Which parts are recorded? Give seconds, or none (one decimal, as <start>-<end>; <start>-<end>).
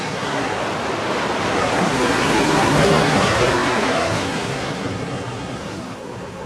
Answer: 0.6-1.5